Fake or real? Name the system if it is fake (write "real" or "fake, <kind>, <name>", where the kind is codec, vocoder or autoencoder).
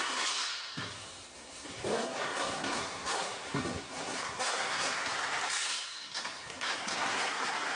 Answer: fake, codec, SNAC